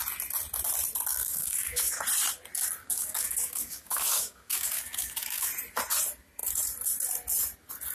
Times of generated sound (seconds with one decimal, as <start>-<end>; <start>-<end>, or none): 1.1-2.0; 2.8-5.5